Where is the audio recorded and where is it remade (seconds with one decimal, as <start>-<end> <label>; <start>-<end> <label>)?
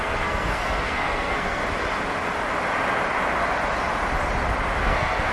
0.0-1.6 remade; 1.6-4.8 recorded; 4.8-5.3 remade